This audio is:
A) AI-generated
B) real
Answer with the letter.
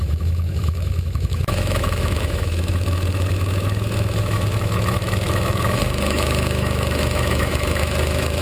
A